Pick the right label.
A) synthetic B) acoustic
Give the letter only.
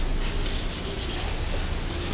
B